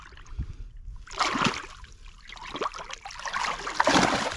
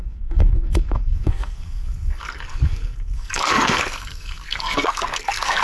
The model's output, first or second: second